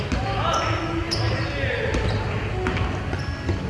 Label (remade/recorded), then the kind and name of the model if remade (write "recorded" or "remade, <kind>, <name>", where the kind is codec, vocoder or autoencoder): recorded